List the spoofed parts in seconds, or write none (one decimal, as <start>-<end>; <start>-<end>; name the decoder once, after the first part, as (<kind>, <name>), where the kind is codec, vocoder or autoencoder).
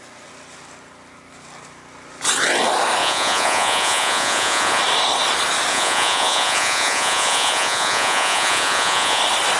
3.0-4.8 (vocoder, Vocos); 5.7-9.2